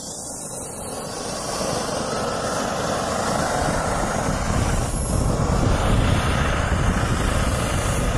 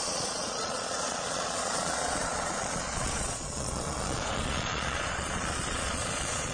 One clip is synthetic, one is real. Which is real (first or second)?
first